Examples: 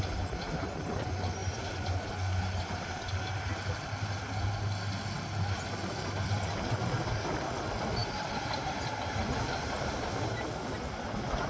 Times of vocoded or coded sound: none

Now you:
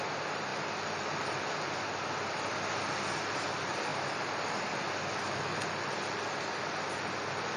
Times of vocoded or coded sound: none

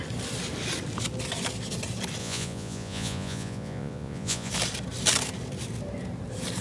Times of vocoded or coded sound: 2.2-4.5

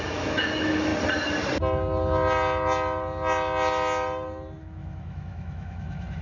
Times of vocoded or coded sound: 0.0-0.9; 4.6-6.2

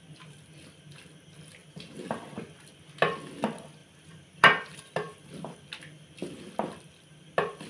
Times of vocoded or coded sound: 1.6-2.3; 3.8-4.9